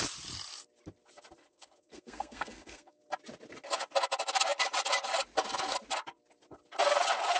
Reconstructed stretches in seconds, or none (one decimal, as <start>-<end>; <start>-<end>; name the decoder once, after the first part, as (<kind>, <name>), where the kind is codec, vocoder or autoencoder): 1.4-3.0 (codec, SNAC)